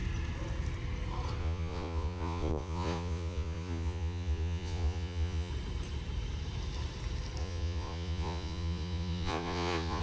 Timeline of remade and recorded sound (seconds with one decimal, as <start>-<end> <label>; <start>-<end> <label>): 0.0-1.4 recorded; 1.4-5.5 remade; 5.5-7.4 recorded; 7.4-10.0 remade